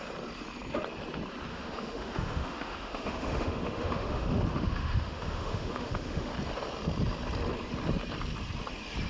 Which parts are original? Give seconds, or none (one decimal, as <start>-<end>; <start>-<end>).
0.0-1.5; 6.3-9.1